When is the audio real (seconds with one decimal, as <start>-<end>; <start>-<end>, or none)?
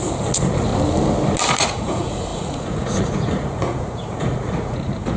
0.7-1.5